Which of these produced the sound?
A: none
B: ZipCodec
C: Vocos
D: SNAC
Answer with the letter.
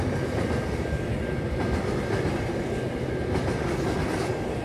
A